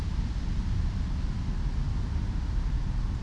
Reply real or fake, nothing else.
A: real